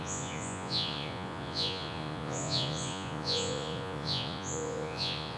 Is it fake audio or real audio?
fake